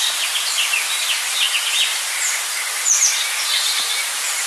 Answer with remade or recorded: recorded